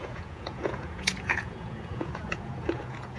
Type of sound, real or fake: fake